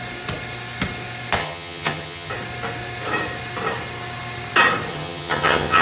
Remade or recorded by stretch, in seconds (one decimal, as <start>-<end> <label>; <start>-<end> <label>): 0.0-1.4 recorded; 1.4-2.3 remade; 2.3-4.9 recorded; 4.9-5.8 remade